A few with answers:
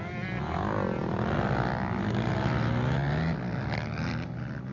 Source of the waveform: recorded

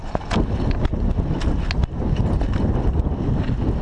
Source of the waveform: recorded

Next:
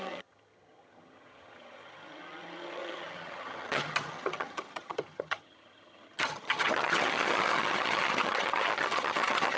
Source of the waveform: remade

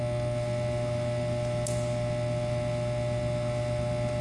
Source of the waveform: recorded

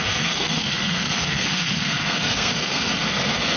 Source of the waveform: remade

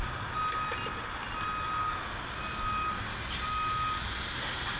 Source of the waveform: recorded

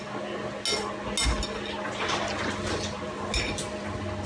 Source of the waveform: recorded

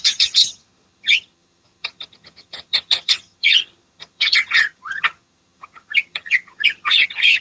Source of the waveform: remade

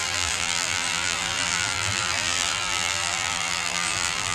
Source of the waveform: remade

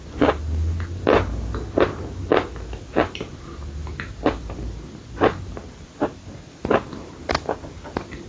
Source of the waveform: recorded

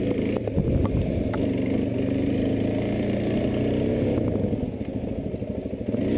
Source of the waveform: recorded